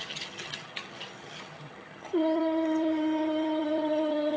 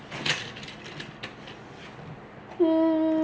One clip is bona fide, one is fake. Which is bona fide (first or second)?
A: second